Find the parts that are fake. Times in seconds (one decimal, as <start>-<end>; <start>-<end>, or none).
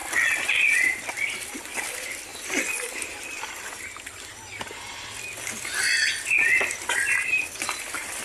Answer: 0.0-2.3; 6.9-8.2